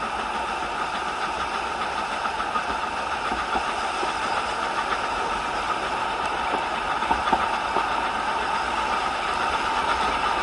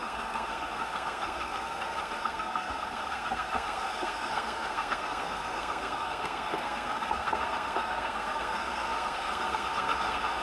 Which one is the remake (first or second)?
second